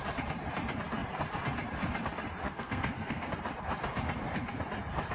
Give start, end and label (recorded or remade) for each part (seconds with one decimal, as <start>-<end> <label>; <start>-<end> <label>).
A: 0.0-2.4 recorded; 2.4-3.3 remade; 3.3-5.1 recorded